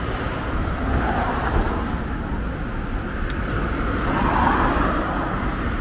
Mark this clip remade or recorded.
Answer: recorded